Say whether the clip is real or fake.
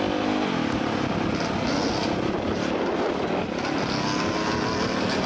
real